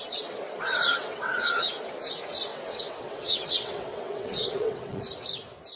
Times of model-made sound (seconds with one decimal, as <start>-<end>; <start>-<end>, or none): 0.9-1.7; 2.5-5.0